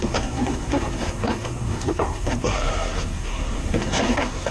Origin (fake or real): fake